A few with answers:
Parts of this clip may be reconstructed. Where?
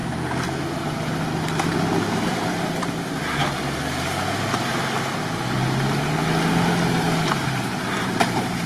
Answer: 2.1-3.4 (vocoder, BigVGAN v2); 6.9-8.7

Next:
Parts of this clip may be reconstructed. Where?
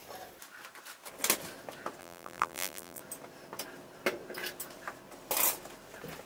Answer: 2.0-3.0 (vocoder, BigVGAN v2)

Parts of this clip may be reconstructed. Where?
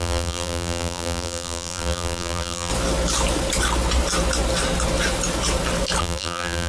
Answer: 0.0-2.7 (vocoder, BigVGAN v2); 6.0-6.7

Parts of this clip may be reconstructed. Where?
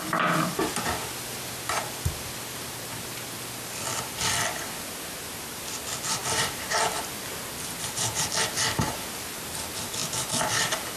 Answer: 6.2-6.8 (vocoder, BigVGAN v2)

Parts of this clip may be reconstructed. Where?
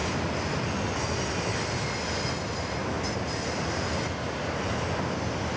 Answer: none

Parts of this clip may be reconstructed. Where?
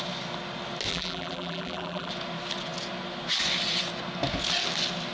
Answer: 0.9-2.1 (vocoder, BigVGAN v2)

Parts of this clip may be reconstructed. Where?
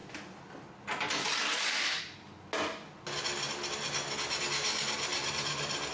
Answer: 5.1-5.9 (vocoder, BigVGAN v2)